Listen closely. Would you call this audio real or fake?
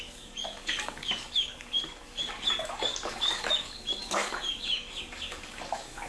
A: fake